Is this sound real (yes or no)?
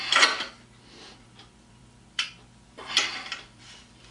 no